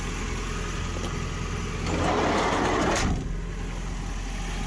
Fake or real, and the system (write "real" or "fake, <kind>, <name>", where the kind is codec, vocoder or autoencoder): real